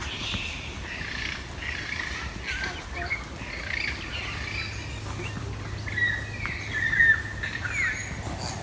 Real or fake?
real